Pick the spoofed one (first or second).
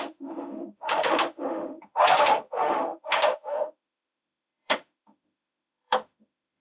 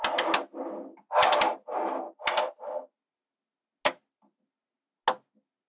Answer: first